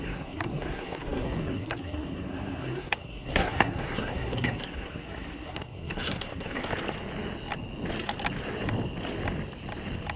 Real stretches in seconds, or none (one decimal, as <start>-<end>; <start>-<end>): 6.7-10.2